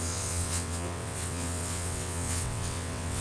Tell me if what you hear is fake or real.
fake